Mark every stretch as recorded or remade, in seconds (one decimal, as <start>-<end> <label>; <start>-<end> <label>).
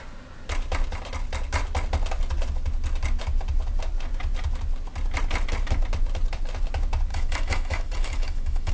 0.0-7.1 recorded; 7.1-8.7 remade